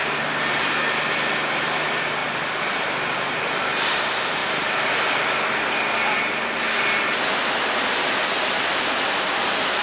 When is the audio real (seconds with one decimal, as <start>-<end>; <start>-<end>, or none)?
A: 0.9-2.2; 4.0-9.8